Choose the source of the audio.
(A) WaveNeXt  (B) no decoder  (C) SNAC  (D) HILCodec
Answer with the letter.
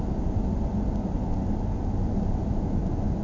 B